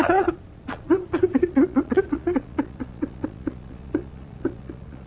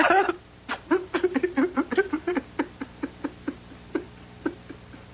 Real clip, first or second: second